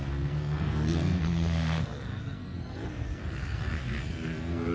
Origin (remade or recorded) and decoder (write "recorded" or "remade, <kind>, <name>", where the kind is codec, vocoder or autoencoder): remade, codec, SNAC